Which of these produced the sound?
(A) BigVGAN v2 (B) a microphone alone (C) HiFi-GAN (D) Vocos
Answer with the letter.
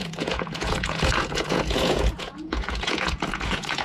D